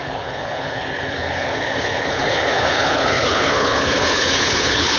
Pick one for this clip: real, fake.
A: fake